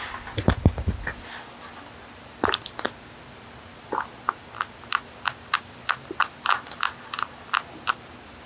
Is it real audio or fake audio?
real